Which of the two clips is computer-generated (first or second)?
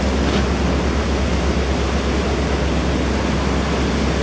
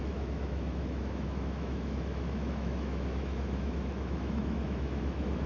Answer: second